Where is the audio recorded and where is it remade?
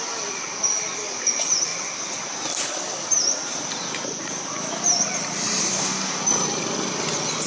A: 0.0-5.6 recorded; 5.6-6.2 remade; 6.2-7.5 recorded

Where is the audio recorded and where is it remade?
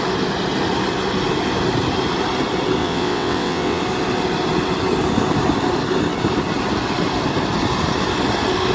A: 0.0-2.8 recorded; 2.8-3.8 remade; 3.8-8.7 recorded